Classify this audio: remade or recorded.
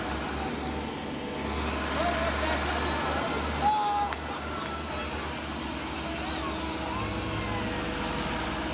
recorded